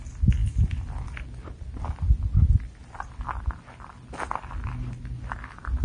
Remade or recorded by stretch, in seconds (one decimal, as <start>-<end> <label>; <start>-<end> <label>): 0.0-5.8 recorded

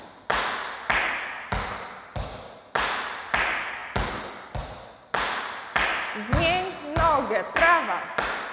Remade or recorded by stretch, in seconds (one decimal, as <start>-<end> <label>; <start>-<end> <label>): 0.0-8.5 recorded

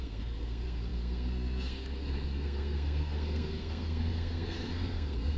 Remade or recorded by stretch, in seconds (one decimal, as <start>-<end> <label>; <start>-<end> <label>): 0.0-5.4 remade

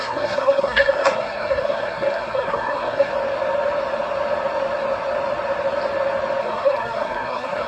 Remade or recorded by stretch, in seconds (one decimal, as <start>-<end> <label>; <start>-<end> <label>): 0.0-3.1 remade; 3.1-6.4 recorded; 6.4-7.7 remade

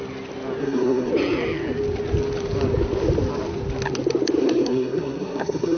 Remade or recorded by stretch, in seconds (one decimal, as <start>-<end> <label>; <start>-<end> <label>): 0.0-0.6 recorded; 0.6-1.1 remade; 1.1-4.4 recorded; 4.4-5.8 remade